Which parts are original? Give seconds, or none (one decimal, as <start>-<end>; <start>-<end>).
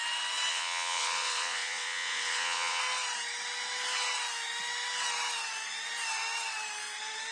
0.0-0.5; 2.8-7.3